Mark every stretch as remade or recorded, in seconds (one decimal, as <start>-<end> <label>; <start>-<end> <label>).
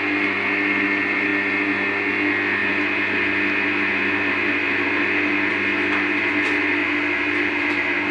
0.0-6.8 recorded; 6.8-8.1 remade